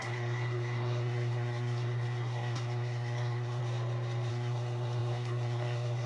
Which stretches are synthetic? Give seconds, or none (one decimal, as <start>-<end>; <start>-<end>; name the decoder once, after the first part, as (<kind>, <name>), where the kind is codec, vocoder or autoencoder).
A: 0.0-3.6 (codec, SNAC); 4.3-6.1